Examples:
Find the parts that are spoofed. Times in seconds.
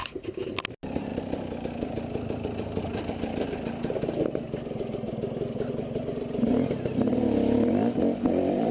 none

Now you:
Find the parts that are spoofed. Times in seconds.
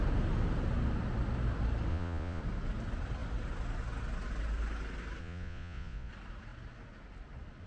1.9-2.4 (vocoder, Vocos); 5.2-6.1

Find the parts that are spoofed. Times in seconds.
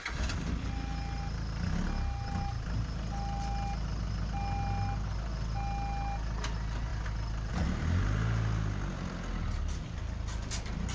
none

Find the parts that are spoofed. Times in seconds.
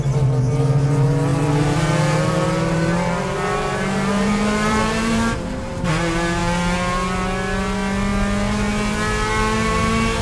1.3-5.9 (vocoder, BigVGAN v2)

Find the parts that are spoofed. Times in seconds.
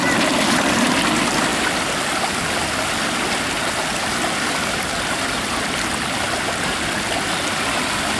none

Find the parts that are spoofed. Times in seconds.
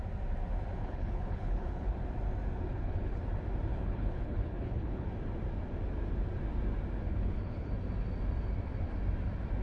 0.8-1.9 (codec, HILCodec); 2.7-3.2; 3.7-5.1; 7.1-7.7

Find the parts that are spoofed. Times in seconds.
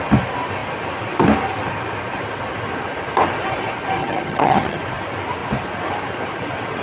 4.0-4.8 (vocoder, HiFi-GAN)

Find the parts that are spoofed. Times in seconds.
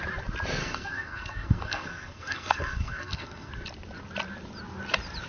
0.6-3.5 (codec, SNAC)